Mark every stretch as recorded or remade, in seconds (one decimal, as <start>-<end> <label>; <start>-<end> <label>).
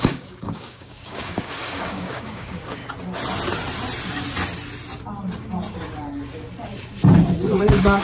0.0-2.8 remade; 2.8-7.6 recorded; 7.6-8.0 remade